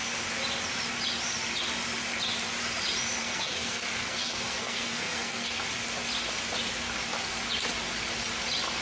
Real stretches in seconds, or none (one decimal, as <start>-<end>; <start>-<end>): 0.0-3.2; 5.6-8.8